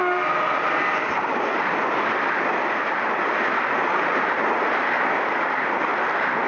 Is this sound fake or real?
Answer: real